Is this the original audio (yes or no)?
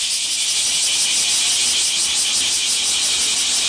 yes